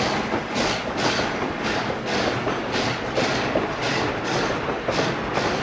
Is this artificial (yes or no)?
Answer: no